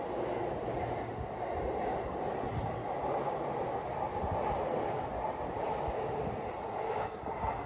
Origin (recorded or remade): recorded